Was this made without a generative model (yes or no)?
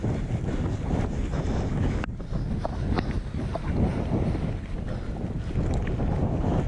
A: yes